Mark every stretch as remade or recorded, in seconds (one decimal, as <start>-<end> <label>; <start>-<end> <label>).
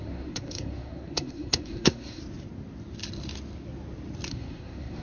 0.0-2.2 remade; 2.2-4.3 recorded; 4.3-5.0 remade